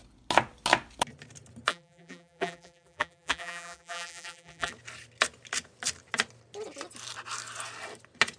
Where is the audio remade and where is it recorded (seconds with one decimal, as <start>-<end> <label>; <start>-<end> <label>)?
0.0-1.7 recorded; 1.7-4.7 remade; 4.7-8.4 recorded